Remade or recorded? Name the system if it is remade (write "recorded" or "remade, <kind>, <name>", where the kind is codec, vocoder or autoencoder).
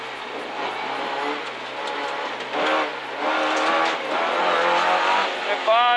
recorded